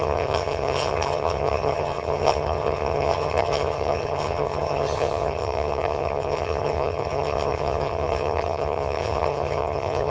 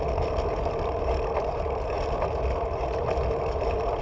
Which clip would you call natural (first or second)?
second